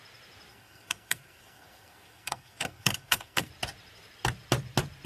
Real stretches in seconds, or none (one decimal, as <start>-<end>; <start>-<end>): 0.0-0.5; 3.5-5.1